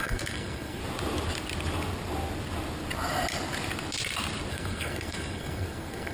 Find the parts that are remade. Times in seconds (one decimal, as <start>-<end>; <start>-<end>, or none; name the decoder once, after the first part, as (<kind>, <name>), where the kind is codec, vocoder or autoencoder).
0.0-0.8 (codec, SNAC); 4.5-6.1